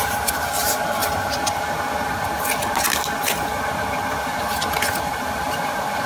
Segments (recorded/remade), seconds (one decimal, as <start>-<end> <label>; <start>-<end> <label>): 0.0-1.0 remade; 1.0-4.7 recorded; 4.7-6.1 remade